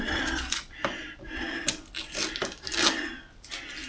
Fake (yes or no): no